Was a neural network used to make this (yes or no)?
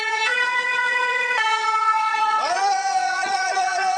yes